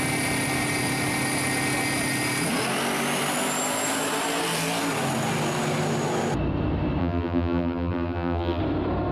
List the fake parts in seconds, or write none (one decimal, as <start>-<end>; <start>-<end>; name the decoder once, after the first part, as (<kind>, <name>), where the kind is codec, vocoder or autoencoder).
7.0-8.6 (vocoder, BigVGAN v2)